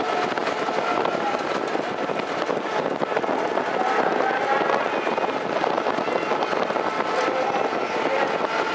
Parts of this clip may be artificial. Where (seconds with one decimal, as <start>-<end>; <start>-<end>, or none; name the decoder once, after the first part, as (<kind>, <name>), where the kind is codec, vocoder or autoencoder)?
none